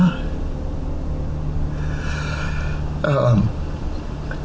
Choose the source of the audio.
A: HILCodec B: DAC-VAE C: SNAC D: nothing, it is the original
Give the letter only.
D